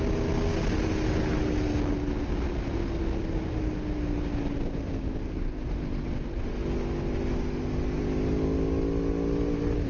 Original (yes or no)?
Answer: yes